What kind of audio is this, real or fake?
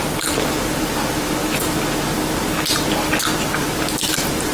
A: real